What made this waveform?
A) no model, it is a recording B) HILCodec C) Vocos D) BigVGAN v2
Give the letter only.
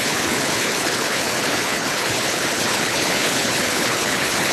B